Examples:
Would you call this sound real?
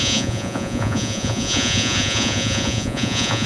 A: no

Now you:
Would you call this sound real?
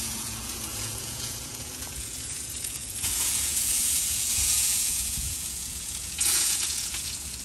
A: no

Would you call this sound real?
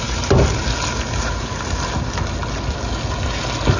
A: yes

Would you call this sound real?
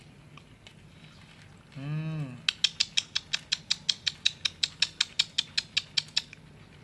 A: yes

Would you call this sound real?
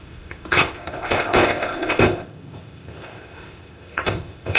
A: no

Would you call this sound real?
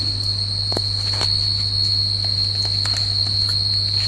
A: yes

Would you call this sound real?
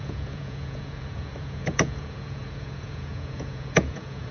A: no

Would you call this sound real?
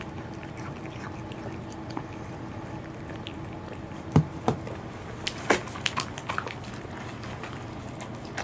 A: yes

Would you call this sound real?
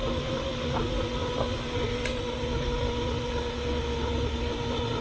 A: yes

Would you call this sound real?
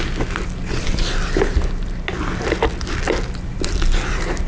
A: yes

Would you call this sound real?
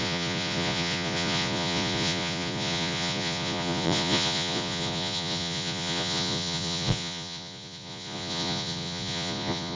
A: no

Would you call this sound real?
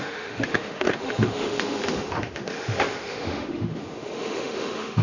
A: no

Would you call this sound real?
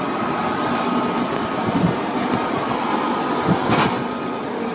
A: yes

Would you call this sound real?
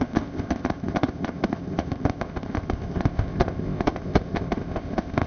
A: no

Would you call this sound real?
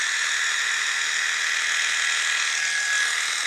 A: yes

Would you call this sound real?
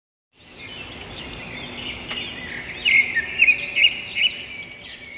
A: yes